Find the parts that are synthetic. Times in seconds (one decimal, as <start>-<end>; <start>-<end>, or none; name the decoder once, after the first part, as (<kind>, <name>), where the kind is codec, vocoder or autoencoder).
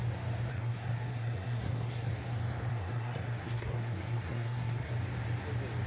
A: 0.5-2.1 (codec, SNAC); 2.7-4.9